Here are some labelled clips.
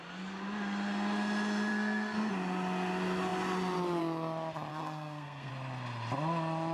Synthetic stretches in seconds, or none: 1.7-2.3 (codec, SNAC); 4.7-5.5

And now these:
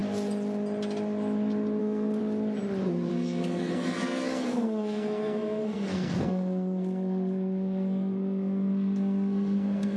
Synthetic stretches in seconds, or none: 1.8-2.2 (codec, SNAC); 3.1-10.0

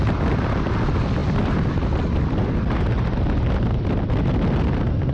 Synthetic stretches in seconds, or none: 1.2-2.5 (vocoder, BigVGAN v2)

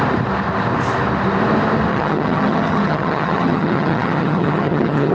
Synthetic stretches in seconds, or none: 1.9-5.1 (vocoder, HiFi-GAN)

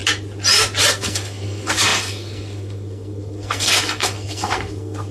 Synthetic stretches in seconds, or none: 0.9-5.1 (codec, SNAC)